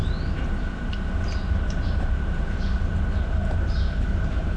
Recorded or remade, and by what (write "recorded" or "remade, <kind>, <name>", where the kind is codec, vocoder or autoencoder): recorded